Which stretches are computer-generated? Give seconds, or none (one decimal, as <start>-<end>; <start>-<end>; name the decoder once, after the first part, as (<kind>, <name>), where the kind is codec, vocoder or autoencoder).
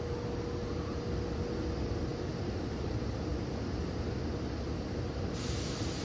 none